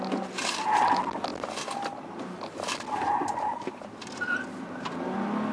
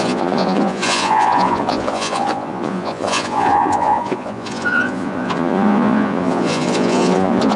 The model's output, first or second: second